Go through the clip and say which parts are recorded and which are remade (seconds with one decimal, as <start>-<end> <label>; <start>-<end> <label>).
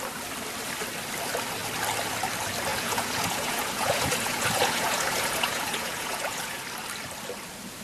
0.0-2.7 recorded; 2.7-6.6 remade; 6.6-7.8 recorded